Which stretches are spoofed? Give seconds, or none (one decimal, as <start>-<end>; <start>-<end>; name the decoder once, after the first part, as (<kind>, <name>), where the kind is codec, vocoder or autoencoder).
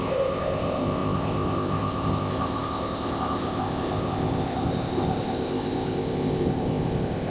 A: 0.0-7.3 (codec, ZipCodec)